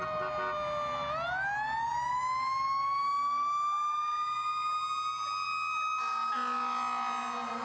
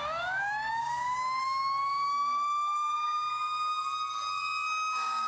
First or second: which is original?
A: first